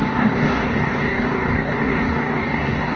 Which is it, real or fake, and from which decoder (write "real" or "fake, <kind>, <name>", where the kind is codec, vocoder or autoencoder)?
fake, codec, DAC